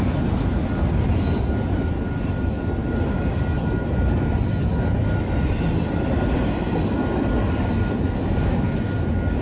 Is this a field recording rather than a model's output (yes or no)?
yes